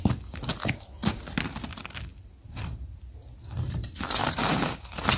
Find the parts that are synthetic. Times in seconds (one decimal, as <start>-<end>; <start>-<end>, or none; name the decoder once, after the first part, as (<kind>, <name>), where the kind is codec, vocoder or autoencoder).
2.1-3.0 (vocoder, BigVGAN v2); 4.2-5.2

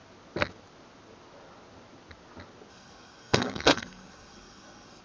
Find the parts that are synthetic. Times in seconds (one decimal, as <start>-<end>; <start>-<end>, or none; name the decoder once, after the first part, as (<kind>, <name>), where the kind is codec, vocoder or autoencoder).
2.7-5.0 (codec, SNAC)

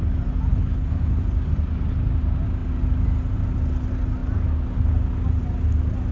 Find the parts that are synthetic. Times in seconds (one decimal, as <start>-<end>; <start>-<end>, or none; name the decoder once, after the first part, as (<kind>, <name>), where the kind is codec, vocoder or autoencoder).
0.5-1.2 (codec, HILCodec)

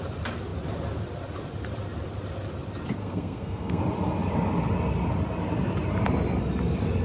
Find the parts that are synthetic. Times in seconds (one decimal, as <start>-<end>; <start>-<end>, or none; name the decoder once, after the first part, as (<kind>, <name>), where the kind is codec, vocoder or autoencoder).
3.0-3.8 (codec, SNAC)

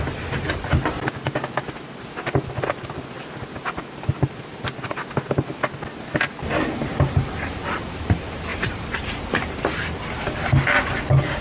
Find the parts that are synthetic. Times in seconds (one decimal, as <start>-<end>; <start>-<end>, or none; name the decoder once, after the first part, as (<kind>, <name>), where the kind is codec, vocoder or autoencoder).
8.5-10.4 (vocoder, BigVGAN v2)